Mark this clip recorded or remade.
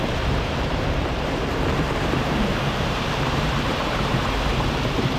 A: remade